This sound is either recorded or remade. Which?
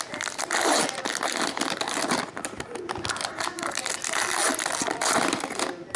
recorded